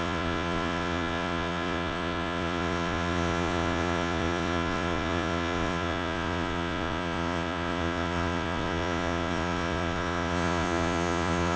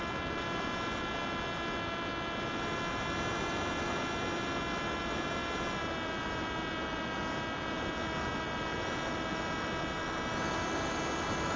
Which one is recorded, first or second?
second